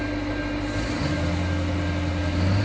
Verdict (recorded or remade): recorded